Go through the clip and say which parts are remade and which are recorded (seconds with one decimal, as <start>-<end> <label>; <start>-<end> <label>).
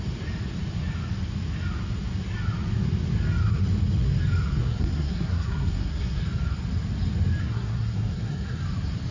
0.0-4.6 recorded; 4.6-6.2 remade; 6.2-7.4 recorded; 7.4-8.6 remade; 8.6-9.1 recorded